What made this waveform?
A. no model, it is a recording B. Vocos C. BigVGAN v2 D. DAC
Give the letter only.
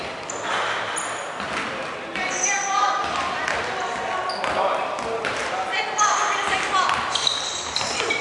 A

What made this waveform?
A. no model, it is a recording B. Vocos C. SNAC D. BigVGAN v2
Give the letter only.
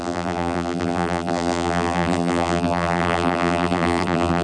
D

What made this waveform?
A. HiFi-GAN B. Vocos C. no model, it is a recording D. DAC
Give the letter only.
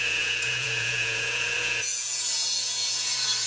B